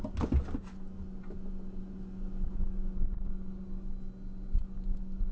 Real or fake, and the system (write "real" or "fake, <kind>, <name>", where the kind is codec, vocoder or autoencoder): real